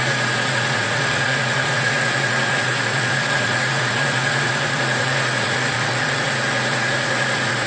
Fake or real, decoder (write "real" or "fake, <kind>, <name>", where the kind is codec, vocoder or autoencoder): fake, vocoder, Vocos